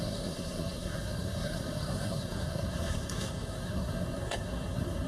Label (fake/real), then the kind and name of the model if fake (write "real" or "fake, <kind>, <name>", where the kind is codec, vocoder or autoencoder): fake, codec, SNAC